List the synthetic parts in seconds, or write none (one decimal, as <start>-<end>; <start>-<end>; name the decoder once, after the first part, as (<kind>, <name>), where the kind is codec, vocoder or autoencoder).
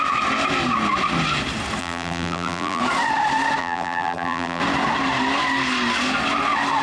1.8-2.8 (vocoder, BigVGAN v2); 3.6-4.6